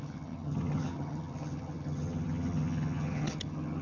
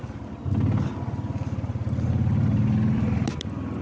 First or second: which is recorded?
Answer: second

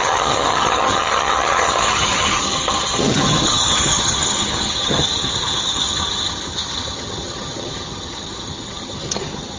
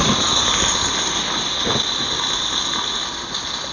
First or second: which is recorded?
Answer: second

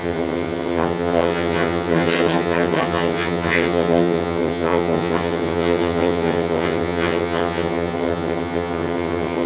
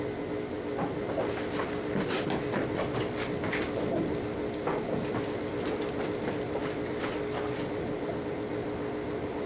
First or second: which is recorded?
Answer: second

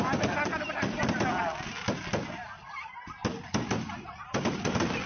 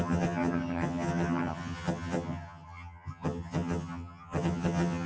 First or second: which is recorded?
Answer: first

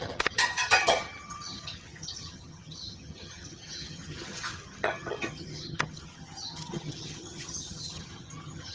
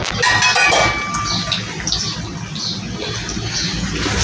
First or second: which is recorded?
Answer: second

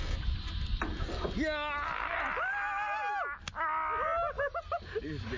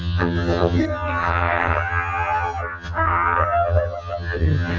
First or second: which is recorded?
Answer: first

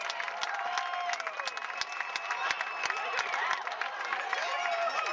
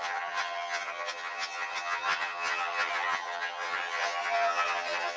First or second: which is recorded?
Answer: first